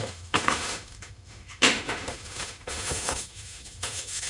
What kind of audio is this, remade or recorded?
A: remade